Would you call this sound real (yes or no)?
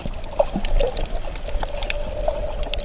yes